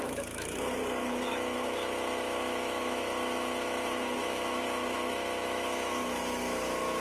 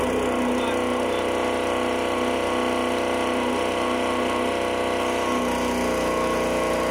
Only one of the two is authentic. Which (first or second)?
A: second